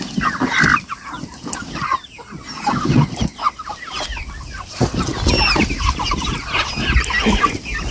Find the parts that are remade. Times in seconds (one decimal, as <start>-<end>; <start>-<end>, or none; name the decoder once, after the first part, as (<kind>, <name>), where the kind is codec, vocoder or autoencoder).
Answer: none